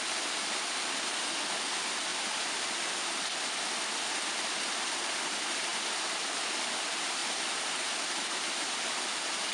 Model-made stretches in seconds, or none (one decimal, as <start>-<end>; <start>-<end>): 2.1-3.1